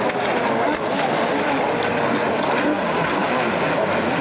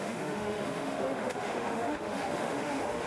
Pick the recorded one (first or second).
first